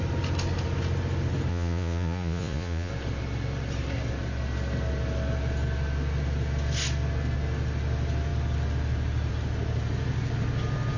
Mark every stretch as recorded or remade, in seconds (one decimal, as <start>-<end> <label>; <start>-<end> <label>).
0.0-1.5 recorded; 1.5-2.9 remade; 2.9-11.0 recorded

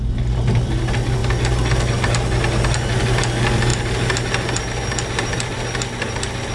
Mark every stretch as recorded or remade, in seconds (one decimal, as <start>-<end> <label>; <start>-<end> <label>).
0.0-6.5 recorded

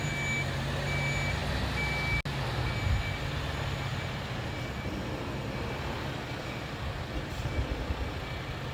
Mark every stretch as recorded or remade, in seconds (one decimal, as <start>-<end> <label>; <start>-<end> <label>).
0.0-3.9 recorded; 3.9-7.5 remade; 7.5-8.7 recorded